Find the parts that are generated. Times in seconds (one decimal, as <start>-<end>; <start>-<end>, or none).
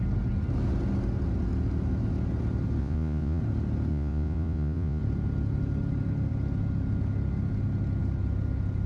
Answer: 2.8-3.4; 3.9-5.0